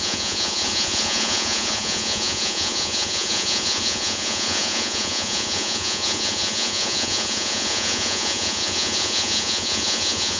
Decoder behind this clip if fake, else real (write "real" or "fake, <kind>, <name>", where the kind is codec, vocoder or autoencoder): fake, vocoder, Vocos